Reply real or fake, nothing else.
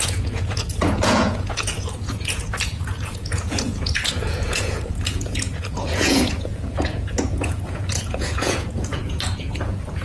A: fake